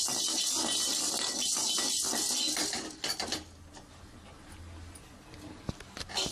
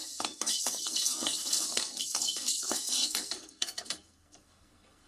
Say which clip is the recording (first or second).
first